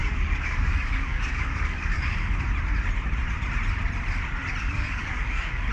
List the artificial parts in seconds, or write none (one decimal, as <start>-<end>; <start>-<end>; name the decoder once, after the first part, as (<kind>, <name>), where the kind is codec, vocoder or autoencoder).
0.0-2.4 (codec, DAC); 4.6-5.7